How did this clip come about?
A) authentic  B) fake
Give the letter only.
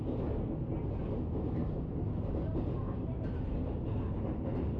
A